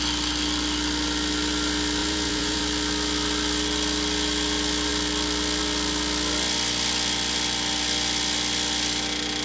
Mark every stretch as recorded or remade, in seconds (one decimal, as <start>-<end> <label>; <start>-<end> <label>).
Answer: 0.0-2.0 recorded; 2.0-2.6 remade; 2.6-9.4 recorded